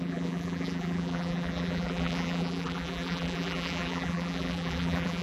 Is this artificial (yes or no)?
yes